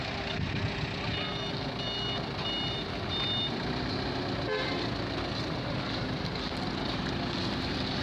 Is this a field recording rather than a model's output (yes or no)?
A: yes